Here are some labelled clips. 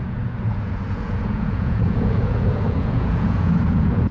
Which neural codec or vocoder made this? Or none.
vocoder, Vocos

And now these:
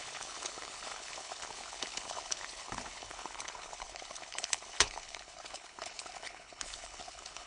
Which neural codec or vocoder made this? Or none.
codec, HILCodec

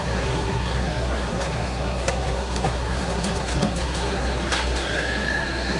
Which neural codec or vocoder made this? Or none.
codec, SNAC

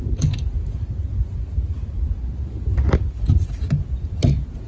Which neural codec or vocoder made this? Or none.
none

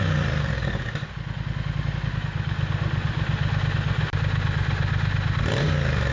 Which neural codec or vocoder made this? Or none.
none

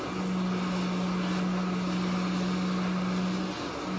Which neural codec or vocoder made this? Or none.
none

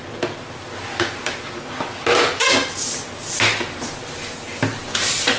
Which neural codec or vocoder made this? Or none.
none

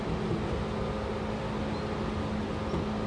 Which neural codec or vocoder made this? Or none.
none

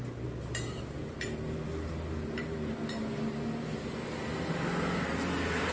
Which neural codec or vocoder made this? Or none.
none